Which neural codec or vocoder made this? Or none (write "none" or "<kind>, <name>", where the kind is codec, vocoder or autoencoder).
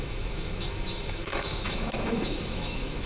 autoencoder, DAC-VAE